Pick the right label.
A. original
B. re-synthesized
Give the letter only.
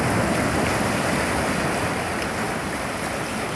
A